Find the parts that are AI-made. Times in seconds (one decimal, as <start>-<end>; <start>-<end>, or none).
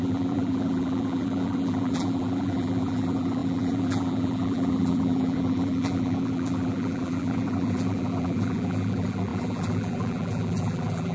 0.0-11.1